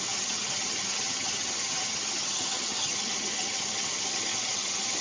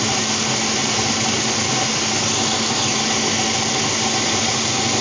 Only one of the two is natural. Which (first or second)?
second